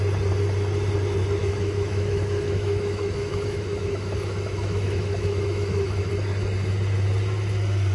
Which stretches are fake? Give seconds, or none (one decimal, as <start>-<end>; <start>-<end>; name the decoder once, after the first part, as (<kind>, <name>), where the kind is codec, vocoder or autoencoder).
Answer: 1.4-6.1 (autoencoder, DAC-VAE)